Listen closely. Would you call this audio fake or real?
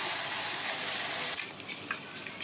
real